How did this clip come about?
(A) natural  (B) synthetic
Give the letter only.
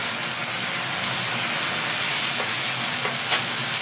A